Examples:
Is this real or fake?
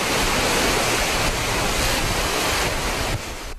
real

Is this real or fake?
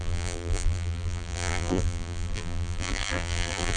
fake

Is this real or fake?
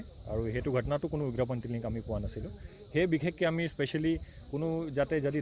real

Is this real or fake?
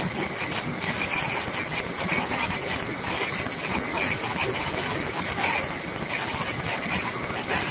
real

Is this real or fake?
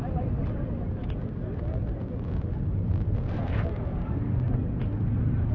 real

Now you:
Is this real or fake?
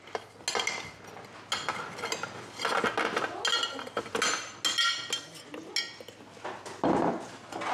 real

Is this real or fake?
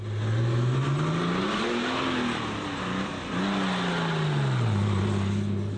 real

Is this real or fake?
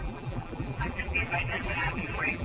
fake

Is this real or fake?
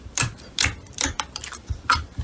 fake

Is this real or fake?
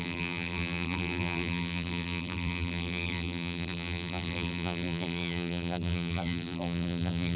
fake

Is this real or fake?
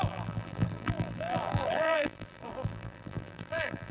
fake